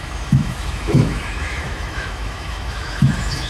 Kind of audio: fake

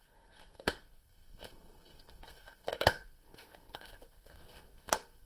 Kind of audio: fake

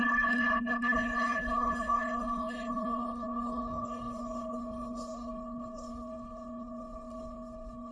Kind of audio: fake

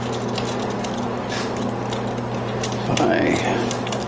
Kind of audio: real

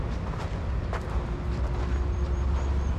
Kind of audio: real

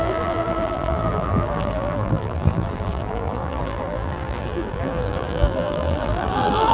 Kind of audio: fake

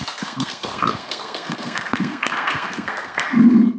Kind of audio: fake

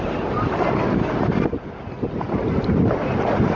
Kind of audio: real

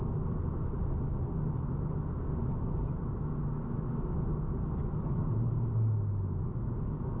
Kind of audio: real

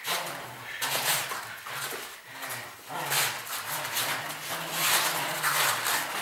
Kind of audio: real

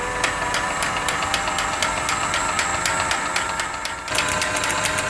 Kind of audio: real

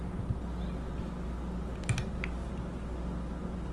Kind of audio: real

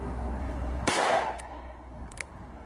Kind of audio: fake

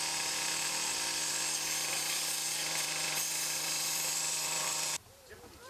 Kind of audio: fake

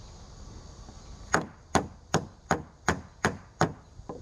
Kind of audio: real